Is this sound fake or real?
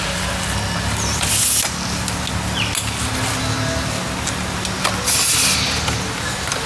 real